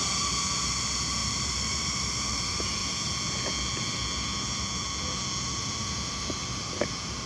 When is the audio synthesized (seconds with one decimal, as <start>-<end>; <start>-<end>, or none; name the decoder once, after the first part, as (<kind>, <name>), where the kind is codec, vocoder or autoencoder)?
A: 1.2-2.4 (vocoder, BigVGAN v2)